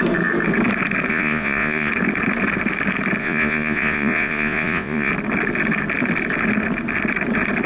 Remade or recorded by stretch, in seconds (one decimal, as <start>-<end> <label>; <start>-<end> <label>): 0.0-1.1 recorded; 1.1-1.9 remade; 1.9-3.2 recorded; 3.2-5.1 remade; 5.1-7.7 recorded